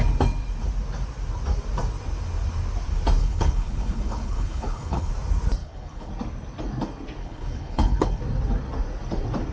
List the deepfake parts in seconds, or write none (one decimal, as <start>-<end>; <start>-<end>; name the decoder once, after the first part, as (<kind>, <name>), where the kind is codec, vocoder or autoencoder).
3.2-5.1 (codec, HILCodec); 5.6-6.1; 7.2-8.2